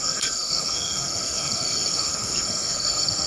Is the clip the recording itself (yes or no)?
no